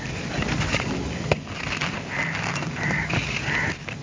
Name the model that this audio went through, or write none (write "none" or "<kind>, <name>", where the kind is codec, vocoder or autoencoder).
none